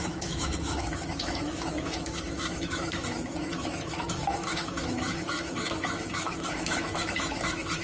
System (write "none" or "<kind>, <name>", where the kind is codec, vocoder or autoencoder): autoencoder, DAC-VAE